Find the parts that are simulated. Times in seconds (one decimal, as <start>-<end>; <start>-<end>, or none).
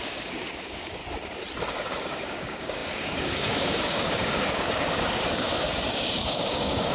0.0-1.0; 1.7-6.9